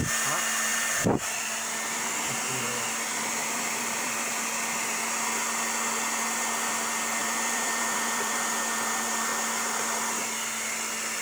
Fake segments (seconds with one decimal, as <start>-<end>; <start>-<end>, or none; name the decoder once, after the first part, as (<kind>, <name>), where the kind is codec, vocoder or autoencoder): 0.7-2.0 (vocoder, BigVGAN v2); 3.4-4.3; 7.2-8.5